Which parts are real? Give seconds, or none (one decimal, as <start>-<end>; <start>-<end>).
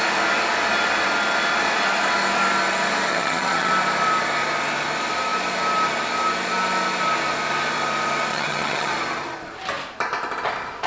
0.0-3.1; 3.7-8.3; 8.9-10.9